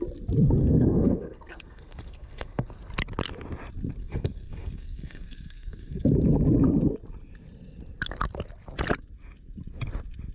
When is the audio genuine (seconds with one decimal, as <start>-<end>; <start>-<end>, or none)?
0.0-0.6; 2.7-4.0; 6.1-10.3

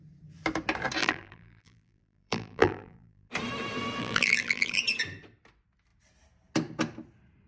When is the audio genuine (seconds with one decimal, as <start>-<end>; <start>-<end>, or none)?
0.0-1.0; 3.3-4.0; 4.8-7.5

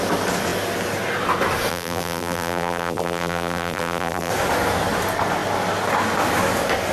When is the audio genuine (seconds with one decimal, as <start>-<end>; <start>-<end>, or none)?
0.0-1.7; 4.3-6.9